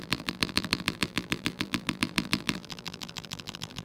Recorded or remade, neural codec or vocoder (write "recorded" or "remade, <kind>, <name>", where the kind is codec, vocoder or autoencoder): remade, vocoder, BigVGAN v2